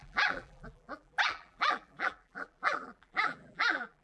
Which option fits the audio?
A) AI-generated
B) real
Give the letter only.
A